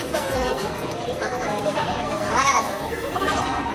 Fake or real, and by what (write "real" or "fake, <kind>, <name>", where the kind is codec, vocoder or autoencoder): fake, codec, SNAC